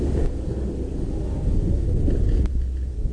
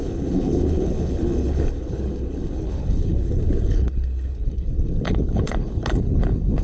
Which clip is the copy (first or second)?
second